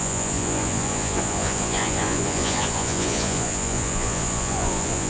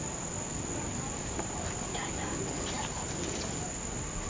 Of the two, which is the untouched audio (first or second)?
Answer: second